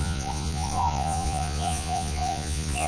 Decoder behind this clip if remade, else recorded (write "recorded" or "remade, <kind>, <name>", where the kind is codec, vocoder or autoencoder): remade, vocoder, Vocos